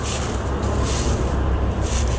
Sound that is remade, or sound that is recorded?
recorded